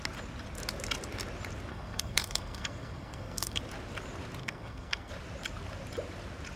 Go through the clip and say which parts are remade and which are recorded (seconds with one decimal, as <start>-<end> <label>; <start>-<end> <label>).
0.0-1.7 recorded; 1.7-3.6 remade; 3.6-4.4 recorded; 4.4-5.1 remade; 5.1-6.6 recorded